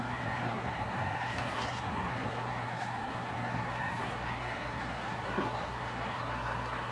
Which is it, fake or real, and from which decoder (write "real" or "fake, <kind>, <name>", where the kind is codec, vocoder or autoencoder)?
fake, codec, SNAC